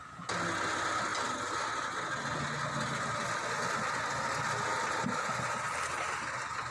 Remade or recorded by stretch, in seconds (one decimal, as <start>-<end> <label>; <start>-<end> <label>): 0.0-6.7 recorded